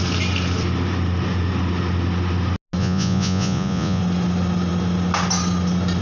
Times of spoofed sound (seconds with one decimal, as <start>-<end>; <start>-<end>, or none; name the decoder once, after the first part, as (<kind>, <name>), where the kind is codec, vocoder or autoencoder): 2.8-4.0 (vocoder, Vocos)